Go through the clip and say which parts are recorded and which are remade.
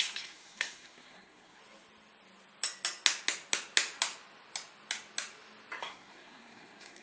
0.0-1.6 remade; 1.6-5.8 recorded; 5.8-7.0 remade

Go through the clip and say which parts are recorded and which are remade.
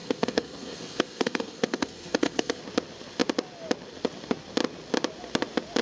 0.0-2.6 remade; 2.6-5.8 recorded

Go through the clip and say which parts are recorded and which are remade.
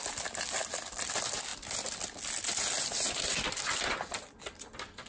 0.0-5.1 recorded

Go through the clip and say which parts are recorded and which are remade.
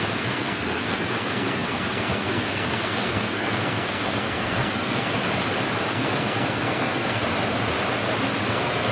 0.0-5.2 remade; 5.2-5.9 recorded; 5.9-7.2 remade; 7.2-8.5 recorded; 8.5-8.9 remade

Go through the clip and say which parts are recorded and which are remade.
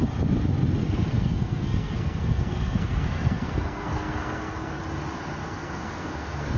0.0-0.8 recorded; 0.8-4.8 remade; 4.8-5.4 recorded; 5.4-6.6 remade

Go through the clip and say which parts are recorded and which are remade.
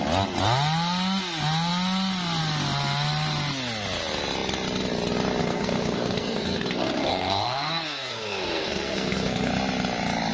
0.0-5.4 recorded; 5.4-9.5 remade; 9.5-10.3 recorded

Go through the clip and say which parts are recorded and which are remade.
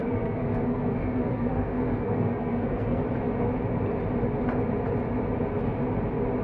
0.0-3.0 remade; 3.0-6.4 recorded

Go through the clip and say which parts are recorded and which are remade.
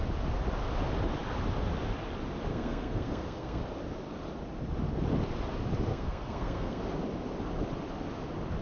0.0-2.5 recorded; 2.5-3.6 remade; 3.6-5.9 recorded; 5.9-6.8 remade; 6.8-8.6 recorded